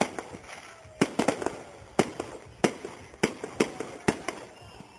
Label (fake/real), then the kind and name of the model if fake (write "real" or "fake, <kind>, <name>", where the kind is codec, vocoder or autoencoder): real